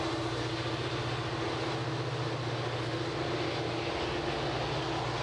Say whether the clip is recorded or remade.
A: recorded